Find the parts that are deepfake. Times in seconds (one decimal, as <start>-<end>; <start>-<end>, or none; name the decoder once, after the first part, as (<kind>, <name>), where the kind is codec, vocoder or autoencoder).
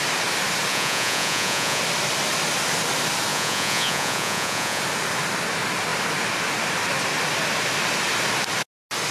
0.7-1.8 (vocoder, Vocos); 3.3-4.8